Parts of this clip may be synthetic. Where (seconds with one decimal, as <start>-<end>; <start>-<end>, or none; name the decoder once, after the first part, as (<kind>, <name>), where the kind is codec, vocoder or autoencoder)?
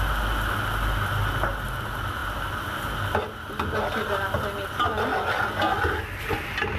none